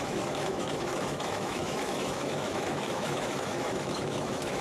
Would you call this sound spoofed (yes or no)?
yes